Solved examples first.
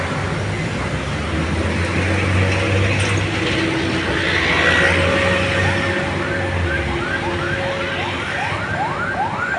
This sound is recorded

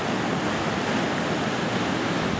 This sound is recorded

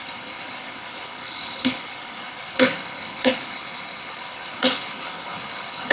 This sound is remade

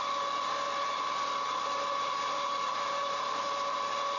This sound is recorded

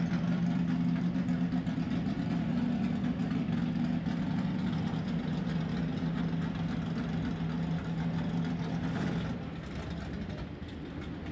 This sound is recorded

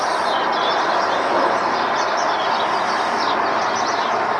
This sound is recorded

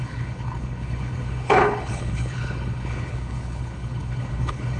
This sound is remade